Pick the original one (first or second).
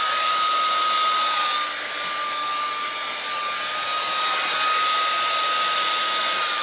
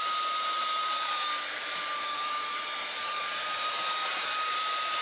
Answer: first